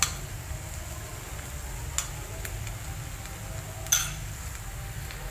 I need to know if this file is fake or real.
real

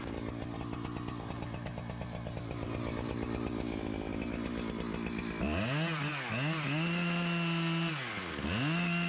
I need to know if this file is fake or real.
real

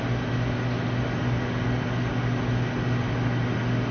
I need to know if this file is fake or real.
real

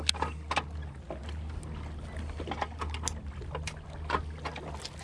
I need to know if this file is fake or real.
real